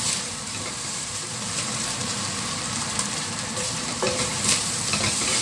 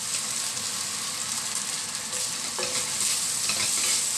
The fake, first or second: first